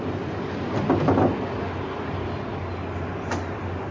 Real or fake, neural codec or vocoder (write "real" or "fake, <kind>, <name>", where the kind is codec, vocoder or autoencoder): real